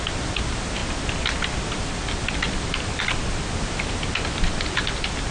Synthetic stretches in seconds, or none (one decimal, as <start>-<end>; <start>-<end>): none